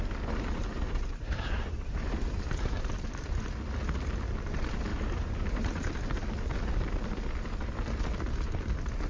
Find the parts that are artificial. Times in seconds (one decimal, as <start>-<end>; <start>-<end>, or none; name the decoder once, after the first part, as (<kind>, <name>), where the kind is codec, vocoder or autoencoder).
0.6-2.9 (vocoder, BigVGAN v2); 4.9-6.0